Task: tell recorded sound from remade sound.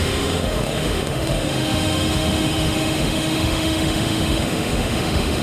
remade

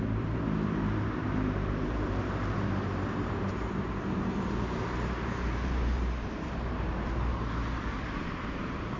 remade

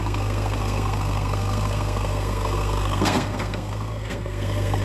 remade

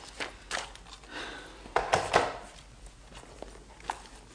recorded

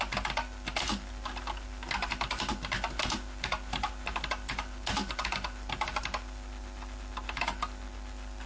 recorded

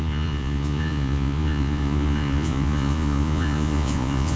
remade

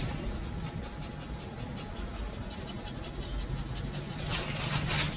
recorded